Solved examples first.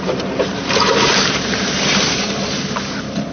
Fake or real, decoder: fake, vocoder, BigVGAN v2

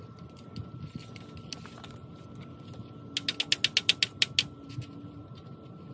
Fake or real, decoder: real